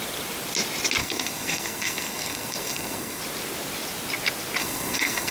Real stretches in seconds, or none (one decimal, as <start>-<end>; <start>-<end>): 0.0-1.0; 3.2-4.6